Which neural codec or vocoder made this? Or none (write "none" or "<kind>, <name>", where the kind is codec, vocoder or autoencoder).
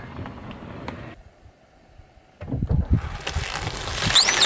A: none